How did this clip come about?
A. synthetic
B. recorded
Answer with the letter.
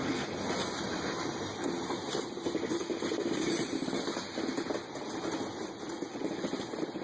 B